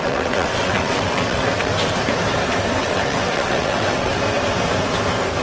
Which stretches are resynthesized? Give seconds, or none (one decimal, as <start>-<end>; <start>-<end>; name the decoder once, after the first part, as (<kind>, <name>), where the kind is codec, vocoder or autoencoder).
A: 0.0-1.7 (vocoder, WaveNeXt); 2.8-4.1